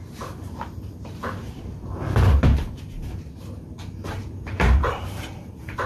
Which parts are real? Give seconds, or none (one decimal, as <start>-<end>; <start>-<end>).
1.4-4.5